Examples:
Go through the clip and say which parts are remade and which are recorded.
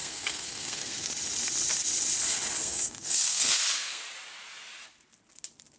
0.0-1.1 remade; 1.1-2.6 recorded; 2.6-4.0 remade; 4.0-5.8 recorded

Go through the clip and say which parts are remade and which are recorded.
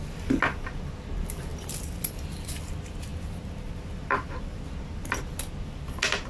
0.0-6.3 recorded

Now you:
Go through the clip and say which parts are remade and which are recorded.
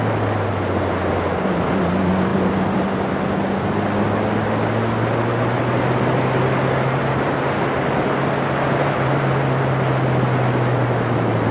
0.0-11.5 recorded